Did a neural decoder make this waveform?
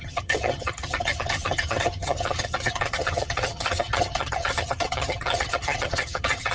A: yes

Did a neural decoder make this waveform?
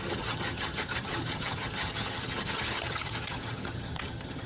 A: yes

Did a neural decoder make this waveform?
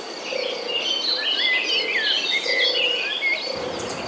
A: no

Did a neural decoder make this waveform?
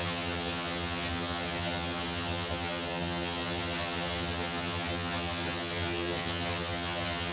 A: yes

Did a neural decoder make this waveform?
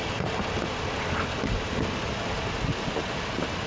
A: no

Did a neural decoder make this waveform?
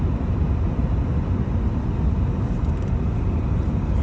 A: no